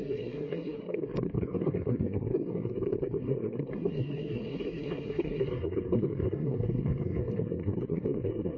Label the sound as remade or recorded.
remade